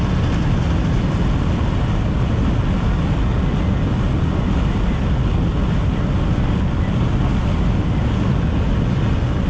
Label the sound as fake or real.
real